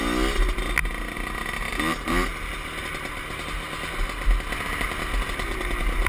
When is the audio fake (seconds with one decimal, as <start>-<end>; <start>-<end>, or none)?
none

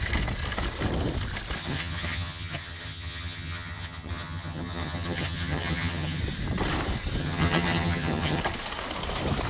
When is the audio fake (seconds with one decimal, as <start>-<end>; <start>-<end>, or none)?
1.6-6.2; 7.2-8.4

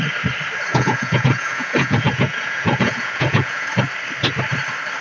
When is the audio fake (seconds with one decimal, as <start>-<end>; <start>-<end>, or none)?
0.7-3.7

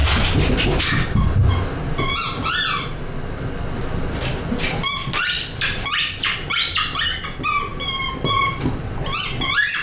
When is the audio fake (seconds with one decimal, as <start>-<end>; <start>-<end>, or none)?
none